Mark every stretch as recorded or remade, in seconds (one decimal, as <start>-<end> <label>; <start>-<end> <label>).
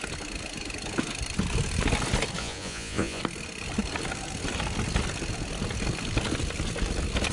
0.0-2.4 recorded; 2.4-3.2 remade; 3.2-7.3 recorded